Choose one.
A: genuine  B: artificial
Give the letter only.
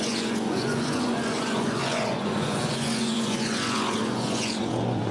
B